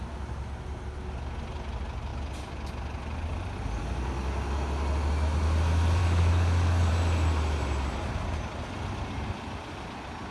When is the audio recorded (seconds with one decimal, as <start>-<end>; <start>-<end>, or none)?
0.0-6.0; 6.9-10.3